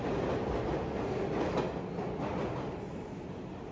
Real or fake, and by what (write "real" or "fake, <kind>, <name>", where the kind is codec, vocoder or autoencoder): real